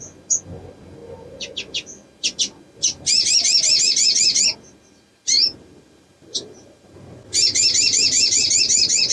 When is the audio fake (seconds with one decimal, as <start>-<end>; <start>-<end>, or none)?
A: 5.4-8.6